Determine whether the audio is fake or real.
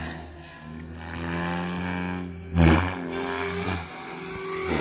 real